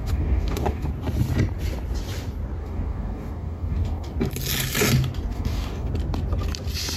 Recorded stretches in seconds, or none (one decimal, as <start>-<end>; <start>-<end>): 0.9-2.6; 4.1-5.3; 5.9-7.0